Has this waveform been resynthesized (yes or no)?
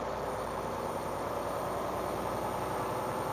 no